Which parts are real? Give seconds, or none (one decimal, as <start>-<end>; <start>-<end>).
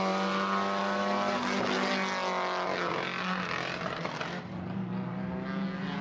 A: 0.0-6.0